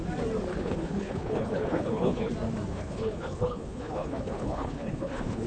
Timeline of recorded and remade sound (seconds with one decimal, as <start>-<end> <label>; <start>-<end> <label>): 0.0-0.5 recorded; 0.5-2.3 remade; 2.3-2.7 recorded; 2.7-5.5 remade